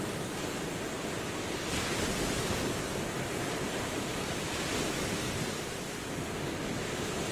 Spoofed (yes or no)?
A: no